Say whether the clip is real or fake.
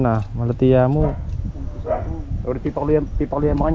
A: real